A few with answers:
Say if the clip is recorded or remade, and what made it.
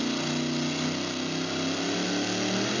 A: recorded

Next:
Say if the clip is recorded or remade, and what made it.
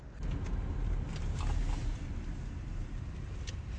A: recorded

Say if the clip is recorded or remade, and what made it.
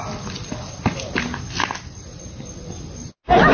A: recorded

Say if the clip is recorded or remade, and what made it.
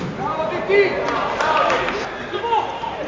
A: recorded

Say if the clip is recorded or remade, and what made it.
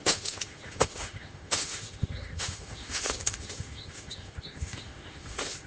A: remade, autoencoder, DAC-VAE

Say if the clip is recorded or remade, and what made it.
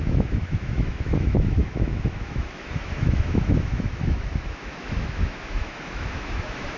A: remade, autoencoder, DAC-VAE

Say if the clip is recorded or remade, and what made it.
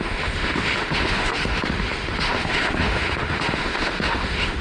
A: remade, autoencoder, DAC-VAE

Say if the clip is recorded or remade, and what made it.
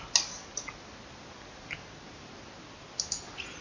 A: recorded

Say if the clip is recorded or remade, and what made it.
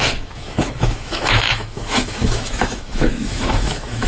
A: remade, autoencoder, DAC-VAE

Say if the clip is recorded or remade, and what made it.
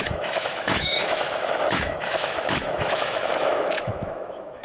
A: remade, autoencoder, DAC-VAE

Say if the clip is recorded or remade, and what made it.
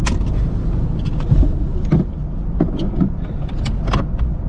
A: recorded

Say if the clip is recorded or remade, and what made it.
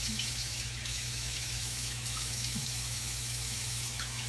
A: remade, autoencoder, DAC-VAE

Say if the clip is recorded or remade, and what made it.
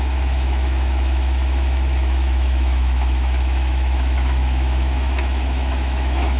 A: remade, autoencoder, DAC-VAE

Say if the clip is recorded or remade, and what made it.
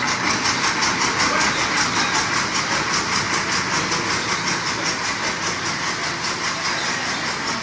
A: recorded